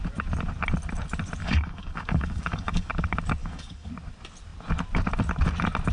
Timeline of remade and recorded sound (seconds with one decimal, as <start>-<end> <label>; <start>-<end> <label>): 0.0-1.4 recorded; 1.4-2.9 remade; 2.9-3.4 recorded; 3.4-3.9 remade; 3.9-5.9 recorded